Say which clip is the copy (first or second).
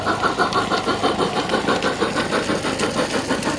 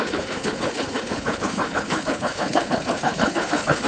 second